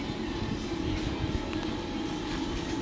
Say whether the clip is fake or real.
real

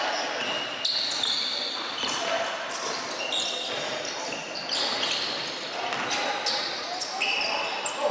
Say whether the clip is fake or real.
real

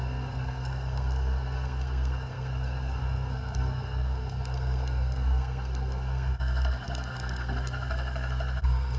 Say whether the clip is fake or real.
fake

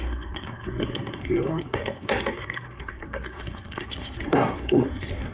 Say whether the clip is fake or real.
fake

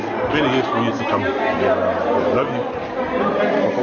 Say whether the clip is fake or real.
real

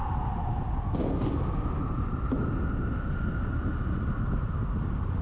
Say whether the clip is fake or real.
real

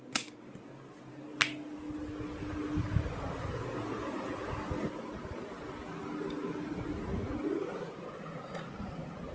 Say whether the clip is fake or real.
real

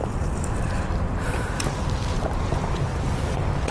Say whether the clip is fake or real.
real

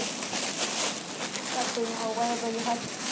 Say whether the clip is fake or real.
real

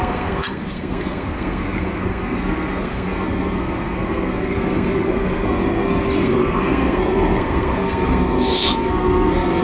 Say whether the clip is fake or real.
fake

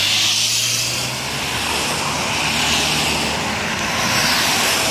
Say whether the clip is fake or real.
real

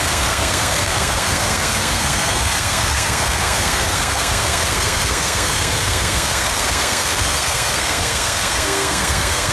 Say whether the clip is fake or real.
fake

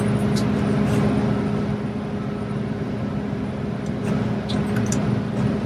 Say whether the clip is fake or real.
real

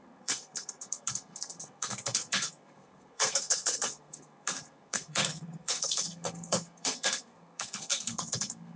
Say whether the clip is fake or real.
fake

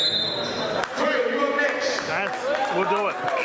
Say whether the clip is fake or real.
real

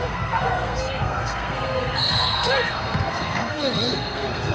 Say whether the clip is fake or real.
fake